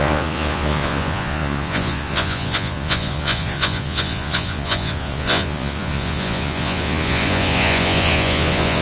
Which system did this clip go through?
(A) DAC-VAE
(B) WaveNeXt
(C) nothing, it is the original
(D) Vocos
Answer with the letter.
D